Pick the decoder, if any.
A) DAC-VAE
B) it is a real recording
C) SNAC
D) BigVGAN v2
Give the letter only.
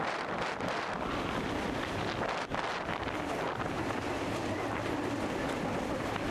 B